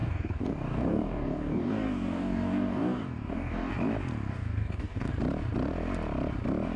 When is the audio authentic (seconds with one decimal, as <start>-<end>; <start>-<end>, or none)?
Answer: 3.7-4.3; 5.1-6.8